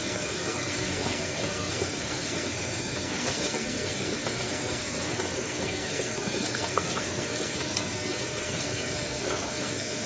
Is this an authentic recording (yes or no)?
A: no